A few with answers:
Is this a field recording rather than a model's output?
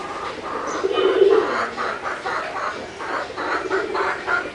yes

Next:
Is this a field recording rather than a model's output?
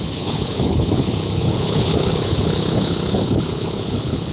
no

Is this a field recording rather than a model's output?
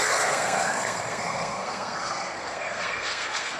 no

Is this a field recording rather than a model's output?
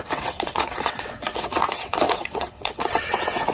no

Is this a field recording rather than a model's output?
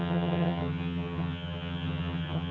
no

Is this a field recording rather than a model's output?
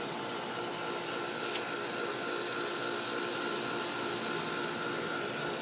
yes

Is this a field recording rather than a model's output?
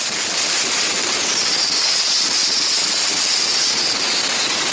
no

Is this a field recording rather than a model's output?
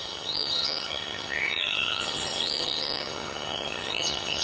no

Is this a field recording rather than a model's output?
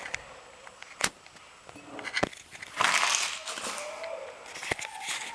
yes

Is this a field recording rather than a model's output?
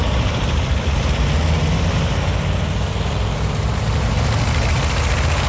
yes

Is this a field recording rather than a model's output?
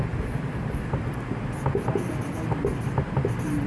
yes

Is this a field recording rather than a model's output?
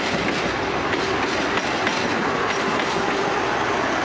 yes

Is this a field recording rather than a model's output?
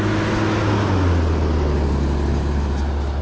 yes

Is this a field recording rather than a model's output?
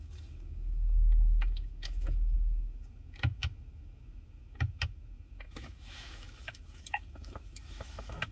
no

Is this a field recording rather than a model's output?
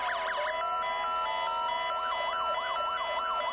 yes